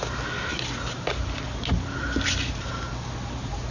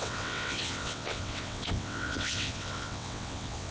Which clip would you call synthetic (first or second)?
second